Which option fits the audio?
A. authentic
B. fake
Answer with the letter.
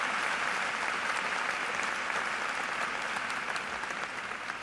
A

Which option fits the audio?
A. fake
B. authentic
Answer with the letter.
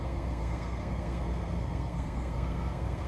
A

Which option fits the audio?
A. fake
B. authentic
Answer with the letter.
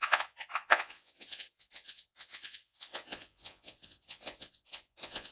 A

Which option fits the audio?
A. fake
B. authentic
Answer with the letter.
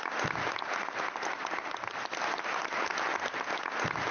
B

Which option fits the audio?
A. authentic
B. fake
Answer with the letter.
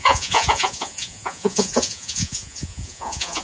B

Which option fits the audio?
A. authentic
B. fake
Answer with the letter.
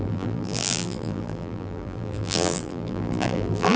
B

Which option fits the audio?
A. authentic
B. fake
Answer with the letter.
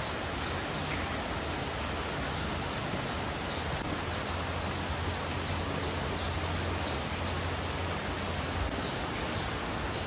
A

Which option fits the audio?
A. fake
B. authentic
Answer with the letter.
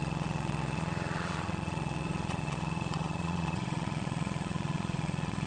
A